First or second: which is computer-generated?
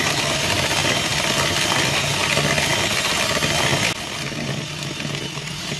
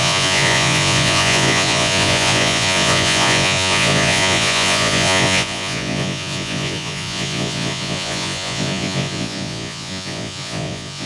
second